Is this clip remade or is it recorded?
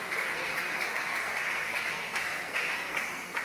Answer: remade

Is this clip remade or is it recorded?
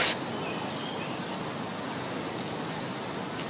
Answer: recorded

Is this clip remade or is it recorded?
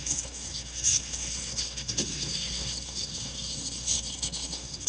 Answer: remade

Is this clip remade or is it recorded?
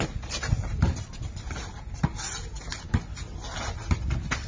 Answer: recorded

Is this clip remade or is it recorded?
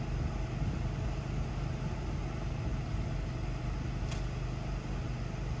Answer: recorded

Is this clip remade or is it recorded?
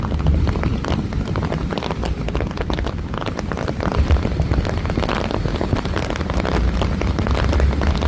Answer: recorded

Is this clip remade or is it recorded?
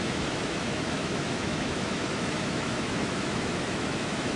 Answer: remade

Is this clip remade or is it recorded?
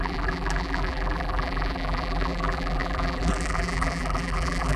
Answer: remade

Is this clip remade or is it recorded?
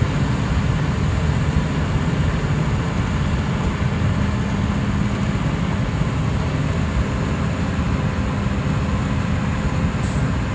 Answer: recorded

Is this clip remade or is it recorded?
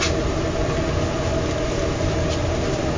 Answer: recorded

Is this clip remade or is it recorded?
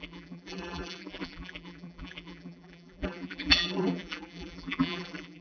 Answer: remade